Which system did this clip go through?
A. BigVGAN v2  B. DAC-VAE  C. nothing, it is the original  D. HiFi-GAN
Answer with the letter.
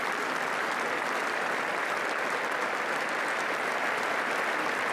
C